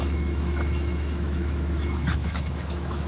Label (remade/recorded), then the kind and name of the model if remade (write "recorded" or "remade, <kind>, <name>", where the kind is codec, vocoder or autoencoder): remade, autoencoder, DAC-VAE